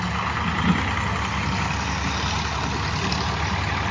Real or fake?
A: real